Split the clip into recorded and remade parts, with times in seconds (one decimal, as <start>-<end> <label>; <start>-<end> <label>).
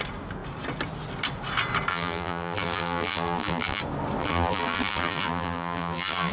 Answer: 0.0-1.9 recorded; 1.9-3.8 remade; 3.8-4.2 recorded; 4.2-6.3 remade